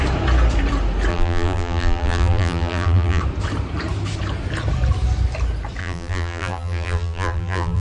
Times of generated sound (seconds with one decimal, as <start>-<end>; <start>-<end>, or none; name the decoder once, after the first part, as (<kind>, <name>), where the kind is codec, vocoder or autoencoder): 1.1-3.2 (vocoder, BigVGAN v2); 5.8-7.8